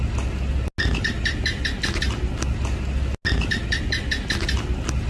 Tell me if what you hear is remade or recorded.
recorded